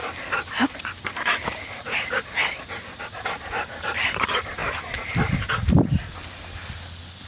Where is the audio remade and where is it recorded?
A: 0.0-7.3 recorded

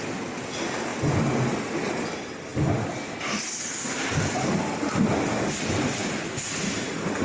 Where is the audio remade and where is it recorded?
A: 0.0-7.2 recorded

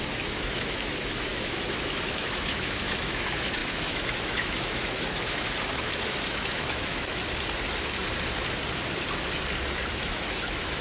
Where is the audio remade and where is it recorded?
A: 0.0-7.1 remade; 7.1-9.9 recorded; 9.9-10.8 remade